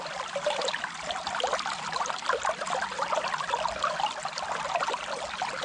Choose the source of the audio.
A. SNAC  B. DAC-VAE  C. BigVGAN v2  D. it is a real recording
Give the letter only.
D